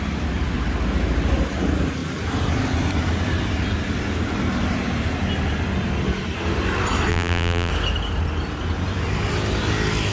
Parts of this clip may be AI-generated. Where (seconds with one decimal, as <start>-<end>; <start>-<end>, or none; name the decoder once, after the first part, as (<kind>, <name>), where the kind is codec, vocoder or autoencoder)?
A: 7.1-7.7 (vocoder, BigVGAN v2)